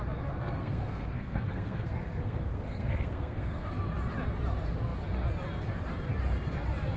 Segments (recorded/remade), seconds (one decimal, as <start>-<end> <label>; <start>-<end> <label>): 0.0-0.4 recorded; 0.4-3.7 remade; 3.7-7.0 recorded